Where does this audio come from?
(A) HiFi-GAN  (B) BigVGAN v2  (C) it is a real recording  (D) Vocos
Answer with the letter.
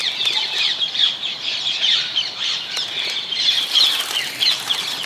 B